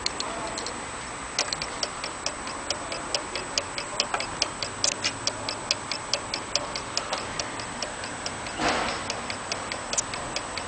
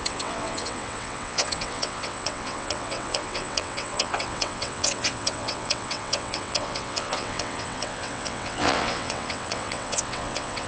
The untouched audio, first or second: first